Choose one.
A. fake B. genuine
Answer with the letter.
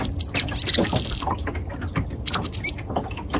B